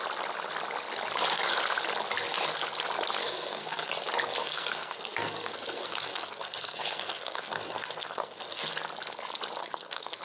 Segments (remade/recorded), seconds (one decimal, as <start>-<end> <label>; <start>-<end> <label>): 0.0-3.2 recorded; 3.2-3.9 remade; 3.9-4.4 recorded; 4.4-8.6 remade; 8.6-9.6 recorded; 9.6-10.2 remade